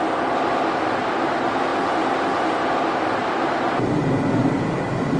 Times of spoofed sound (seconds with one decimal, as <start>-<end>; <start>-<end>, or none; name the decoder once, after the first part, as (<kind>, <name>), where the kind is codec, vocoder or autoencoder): none